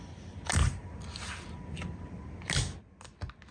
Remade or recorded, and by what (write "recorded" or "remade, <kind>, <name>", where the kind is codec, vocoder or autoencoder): recorded